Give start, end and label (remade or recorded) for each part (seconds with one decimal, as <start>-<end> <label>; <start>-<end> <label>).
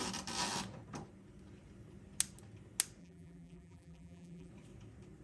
0.0-3.0 recorded; 3.0-4.5 remade; 4.5-5.2 recorded